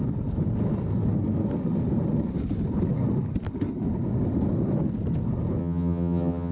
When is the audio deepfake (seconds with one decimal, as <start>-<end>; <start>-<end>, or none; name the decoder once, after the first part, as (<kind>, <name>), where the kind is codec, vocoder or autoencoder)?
5.6-6.5 (vocoder, HiFi-GAN)